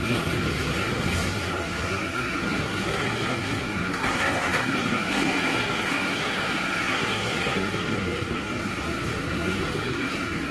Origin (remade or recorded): remade